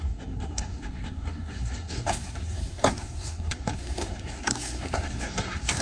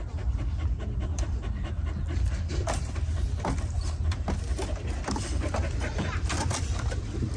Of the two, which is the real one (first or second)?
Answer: second